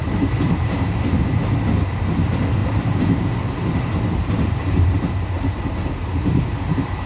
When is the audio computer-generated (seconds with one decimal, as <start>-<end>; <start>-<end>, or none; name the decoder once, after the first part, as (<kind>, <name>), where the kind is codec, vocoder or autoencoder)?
0.0-1.4 (vocoder, BigVGAN v2); 2.6-7.1